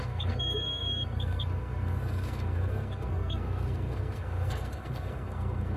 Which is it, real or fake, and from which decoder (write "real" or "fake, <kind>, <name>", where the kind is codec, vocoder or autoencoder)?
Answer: fake, codec, SNAC